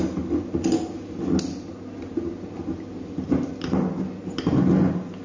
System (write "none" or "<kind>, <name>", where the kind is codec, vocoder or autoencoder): none